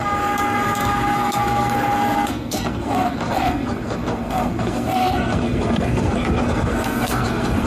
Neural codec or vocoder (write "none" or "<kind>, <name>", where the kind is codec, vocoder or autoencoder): codec, SNAC